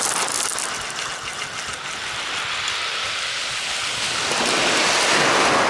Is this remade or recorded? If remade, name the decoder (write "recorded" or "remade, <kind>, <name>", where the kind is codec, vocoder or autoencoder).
recorded